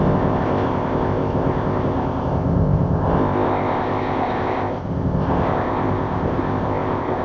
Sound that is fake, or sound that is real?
fake